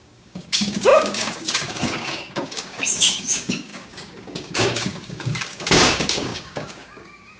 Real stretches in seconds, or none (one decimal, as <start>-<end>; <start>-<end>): none